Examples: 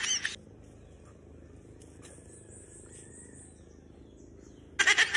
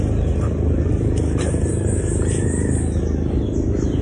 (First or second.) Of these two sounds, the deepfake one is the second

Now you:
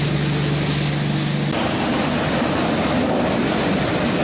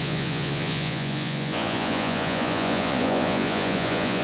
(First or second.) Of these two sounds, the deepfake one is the second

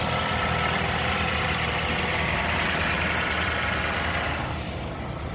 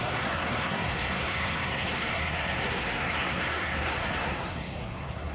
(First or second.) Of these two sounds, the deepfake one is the second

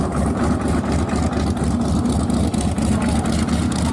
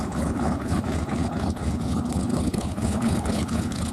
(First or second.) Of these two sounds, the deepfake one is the second